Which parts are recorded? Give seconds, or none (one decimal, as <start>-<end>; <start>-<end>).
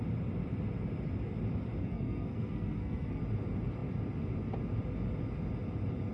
0.0-1.8; 3.2-6.1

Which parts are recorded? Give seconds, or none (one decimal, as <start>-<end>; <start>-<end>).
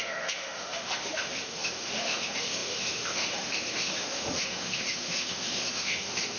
none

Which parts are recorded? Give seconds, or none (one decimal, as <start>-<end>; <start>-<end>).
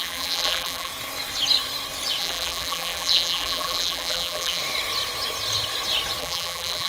0.9-2.2; 4.6-6.2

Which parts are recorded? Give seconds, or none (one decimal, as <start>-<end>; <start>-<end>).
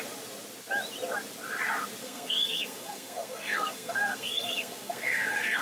0.0-2.0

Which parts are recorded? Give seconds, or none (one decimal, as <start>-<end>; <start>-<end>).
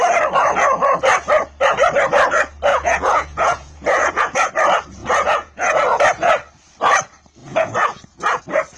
0.0-2.7; 4.5-5.0; 6.0-7.4; 8.4-8.8